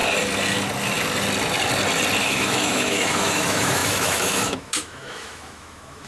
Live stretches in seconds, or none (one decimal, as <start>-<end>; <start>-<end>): 0.0-2.2